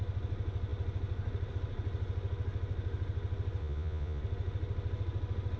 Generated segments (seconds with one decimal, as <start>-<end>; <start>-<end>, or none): 3.6-4.2